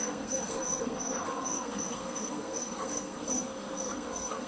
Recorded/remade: remade